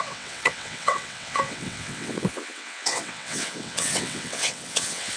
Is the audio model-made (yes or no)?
yes